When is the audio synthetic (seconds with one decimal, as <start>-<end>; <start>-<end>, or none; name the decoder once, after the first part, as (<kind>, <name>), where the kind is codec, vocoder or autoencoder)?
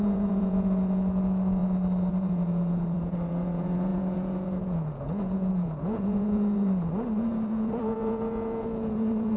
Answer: 0.0-1.6 (vocoder, Vocos); 2.1-9.4